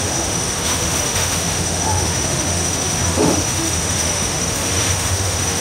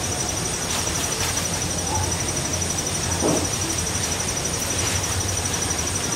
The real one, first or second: second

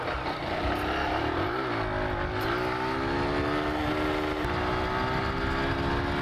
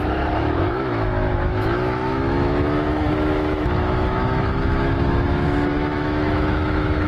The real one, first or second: first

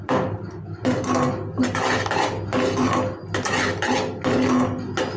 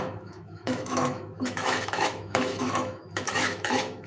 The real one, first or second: first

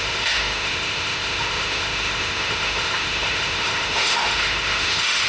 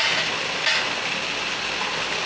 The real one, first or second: second